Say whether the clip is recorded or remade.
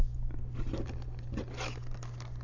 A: recorded